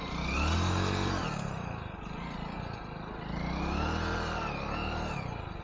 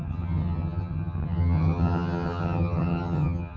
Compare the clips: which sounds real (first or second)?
first